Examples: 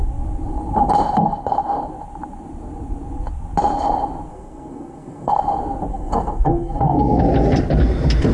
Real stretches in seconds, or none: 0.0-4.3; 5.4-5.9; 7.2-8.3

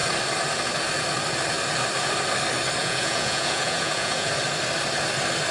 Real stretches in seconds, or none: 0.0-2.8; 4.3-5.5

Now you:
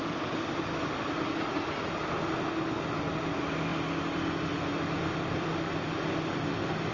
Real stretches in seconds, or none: 0.0-6.9